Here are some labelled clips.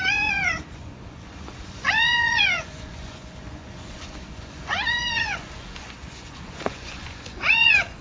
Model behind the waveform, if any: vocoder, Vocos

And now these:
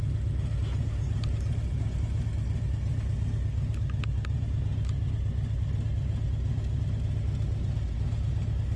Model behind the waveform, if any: none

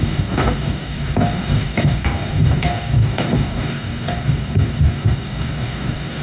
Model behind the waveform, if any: codec, DAC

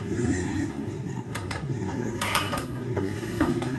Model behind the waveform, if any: codec, SNAC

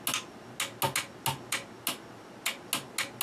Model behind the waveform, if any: none